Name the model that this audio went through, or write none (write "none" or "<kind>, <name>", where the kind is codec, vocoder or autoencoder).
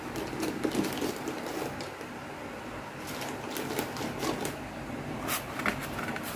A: vocoder, BigVGAN v2